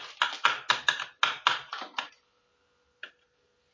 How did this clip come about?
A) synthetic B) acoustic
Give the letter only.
B